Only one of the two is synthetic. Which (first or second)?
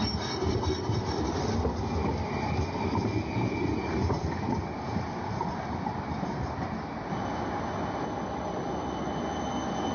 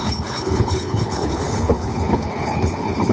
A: second